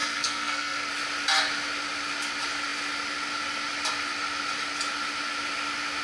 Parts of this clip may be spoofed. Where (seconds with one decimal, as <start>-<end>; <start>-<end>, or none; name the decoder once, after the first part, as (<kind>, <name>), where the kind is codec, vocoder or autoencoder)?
0.0-0.9 (codec, SNAC)